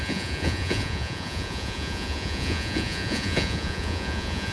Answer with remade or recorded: remade